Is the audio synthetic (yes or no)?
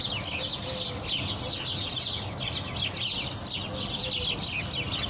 no